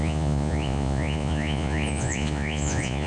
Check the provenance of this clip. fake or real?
fake